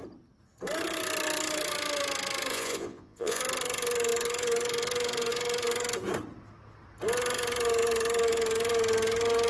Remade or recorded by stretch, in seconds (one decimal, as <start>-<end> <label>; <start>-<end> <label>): 0.0-2.5 recorded; 2.5-3.4 remade; 3.4-9.5 recorded